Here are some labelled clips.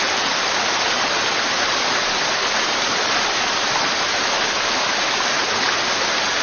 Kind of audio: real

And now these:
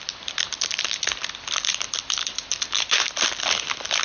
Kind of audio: real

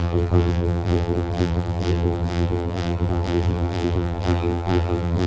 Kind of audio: fake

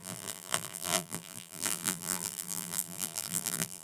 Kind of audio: fake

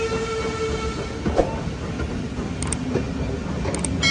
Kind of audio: real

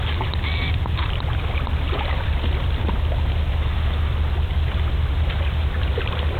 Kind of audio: fake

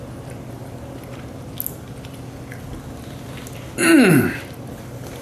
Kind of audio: real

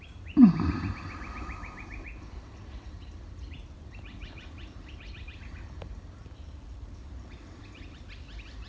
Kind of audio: fake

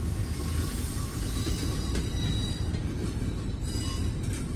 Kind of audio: real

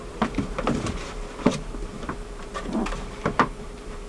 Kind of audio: fake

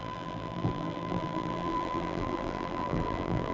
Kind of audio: fake